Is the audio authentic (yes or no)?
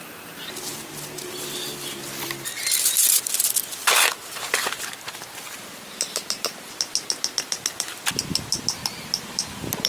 yes